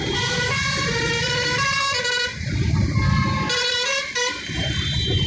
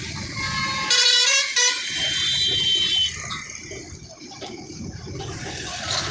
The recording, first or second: second